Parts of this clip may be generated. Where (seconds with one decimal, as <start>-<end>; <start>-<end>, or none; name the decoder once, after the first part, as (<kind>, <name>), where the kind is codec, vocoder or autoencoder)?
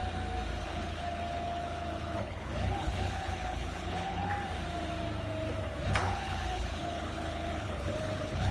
0.6-4.3 (codec, HILCodec); 5.9-8.5